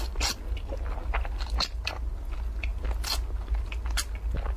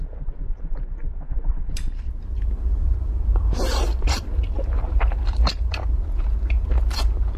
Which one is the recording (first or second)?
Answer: first